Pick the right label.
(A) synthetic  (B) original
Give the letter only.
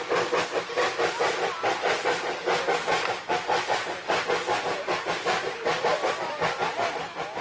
B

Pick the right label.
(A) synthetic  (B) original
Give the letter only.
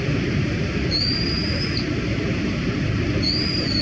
B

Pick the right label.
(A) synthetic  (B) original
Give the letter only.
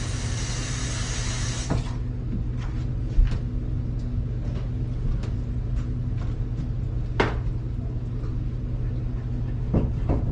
B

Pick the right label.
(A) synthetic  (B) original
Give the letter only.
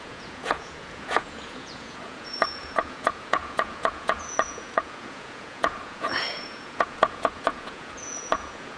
A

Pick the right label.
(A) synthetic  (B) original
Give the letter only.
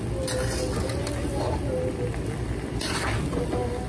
B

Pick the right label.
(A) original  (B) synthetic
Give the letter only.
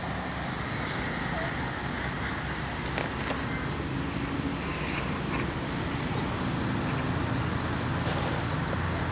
A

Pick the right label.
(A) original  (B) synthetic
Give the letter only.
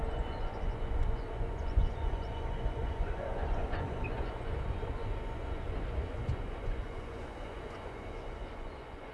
B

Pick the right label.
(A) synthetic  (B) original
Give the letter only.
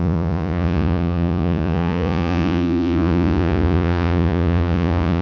A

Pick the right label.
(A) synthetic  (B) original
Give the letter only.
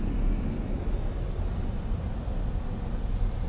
B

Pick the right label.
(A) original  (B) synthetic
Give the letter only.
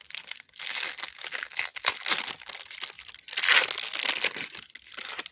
A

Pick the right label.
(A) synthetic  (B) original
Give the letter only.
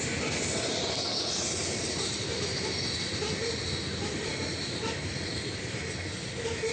B